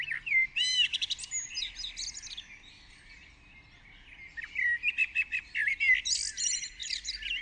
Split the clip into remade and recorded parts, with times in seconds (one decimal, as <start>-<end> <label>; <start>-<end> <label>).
0.0-0.9 remade; 0.9-5.3 recorded; 5.3-7.4 remade